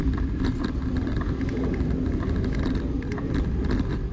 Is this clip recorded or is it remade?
recorded